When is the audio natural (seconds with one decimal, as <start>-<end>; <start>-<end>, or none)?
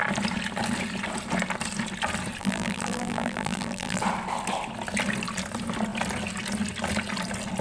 0.0-2.4; 4.0-7.6